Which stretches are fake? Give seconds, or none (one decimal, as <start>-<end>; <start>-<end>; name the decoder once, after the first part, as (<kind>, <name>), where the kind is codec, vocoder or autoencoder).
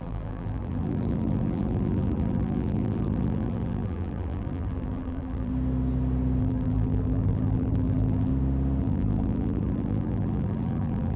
0.0-5.5 (vocoder, BigVGAN v2); 6.4-8.3; 8.8-11.2